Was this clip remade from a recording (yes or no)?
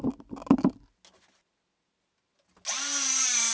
no